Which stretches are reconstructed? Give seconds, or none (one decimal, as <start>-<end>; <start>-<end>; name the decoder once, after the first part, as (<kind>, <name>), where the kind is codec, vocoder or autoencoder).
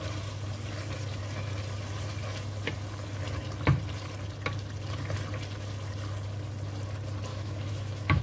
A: 7.3-8.2 (autoencoder, DAC-VAE)